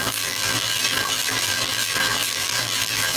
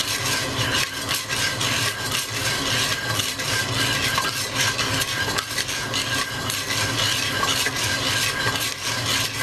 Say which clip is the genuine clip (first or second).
second